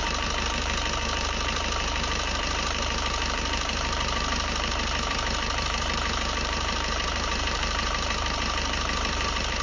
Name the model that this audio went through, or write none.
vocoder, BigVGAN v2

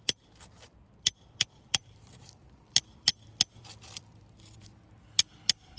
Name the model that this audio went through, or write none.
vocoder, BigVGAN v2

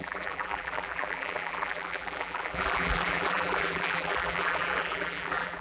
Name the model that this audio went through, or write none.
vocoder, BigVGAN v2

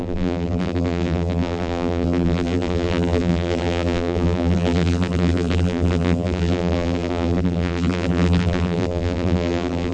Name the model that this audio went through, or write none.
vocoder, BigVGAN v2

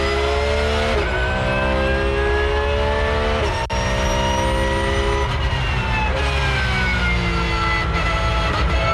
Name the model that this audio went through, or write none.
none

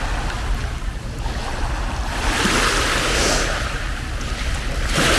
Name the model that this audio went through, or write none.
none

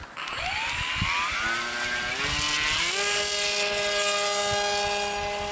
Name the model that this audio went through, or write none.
none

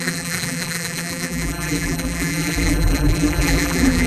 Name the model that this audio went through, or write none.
vocoder, BigVGAN v2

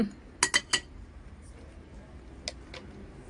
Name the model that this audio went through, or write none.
none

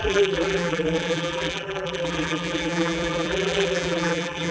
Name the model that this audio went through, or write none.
vocoder, BigVGAN v2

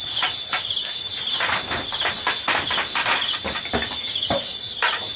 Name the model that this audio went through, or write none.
none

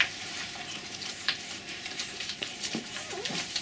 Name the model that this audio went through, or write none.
vocoder, BigVGAN v2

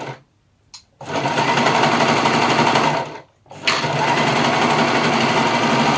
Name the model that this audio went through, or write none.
none